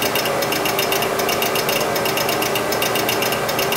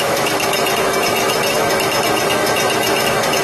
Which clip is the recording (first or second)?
first